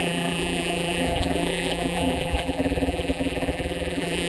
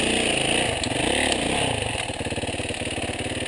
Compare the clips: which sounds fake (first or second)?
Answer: first